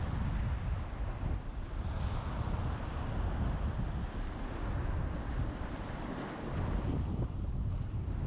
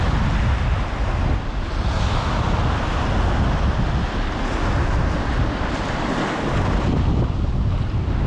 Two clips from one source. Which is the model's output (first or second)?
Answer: first